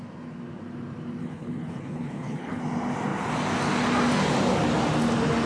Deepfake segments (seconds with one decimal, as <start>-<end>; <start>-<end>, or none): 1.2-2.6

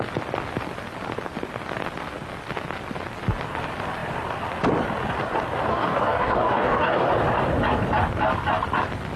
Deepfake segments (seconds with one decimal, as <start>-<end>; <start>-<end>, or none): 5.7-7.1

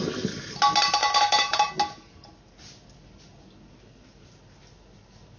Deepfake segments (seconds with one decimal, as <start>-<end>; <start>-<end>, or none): 1.0-1.7

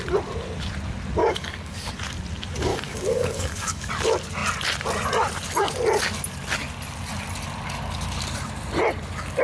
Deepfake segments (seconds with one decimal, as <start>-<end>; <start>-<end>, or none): 1.2-1.9; 2.7-3.9